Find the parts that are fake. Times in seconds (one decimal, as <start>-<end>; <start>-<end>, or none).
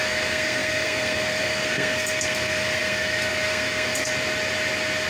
0.0-4.1